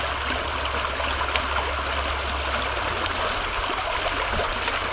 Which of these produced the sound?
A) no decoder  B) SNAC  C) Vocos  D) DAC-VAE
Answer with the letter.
A